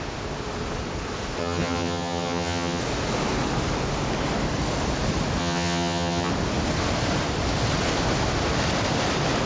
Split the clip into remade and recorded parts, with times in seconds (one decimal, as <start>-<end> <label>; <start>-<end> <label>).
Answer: 0.0-1.4 recorded; 1.4-2.8 remade; 2.8-5.4 recorded; 5.4-6.3 remade; 6.3-9.5 recorded